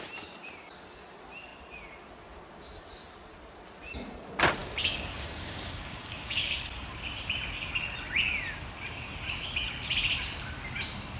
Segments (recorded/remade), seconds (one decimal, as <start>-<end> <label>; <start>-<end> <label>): 0.0-4.6 recorded; 4.6-6.6 remade; 6.6-11.2 recorded